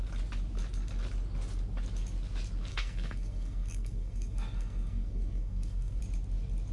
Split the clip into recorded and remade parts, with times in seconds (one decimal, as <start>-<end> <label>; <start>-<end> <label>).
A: 0.0-2.7 recorded; 2.7-6.0 remade; 6.0-6.7 recorded